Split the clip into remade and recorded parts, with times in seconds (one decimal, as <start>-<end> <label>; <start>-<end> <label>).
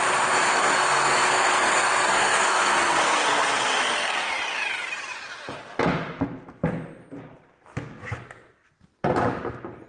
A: 0.0-0.5 recorded; 0.5-4.3 remade; 4.3-9.9 recorded